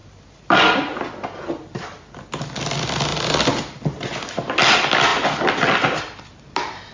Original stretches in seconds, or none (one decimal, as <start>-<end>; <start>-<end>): 0.0-6.9